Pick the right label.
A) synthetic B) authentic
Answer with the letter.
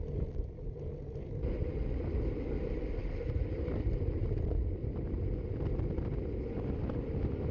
B